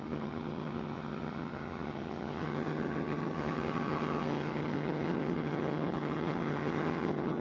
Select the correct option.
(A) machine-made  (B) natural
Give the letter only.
A